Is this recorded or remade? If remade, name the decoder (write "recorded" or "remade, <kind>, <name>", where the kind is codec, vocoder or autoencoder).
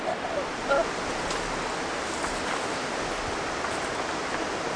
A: recorded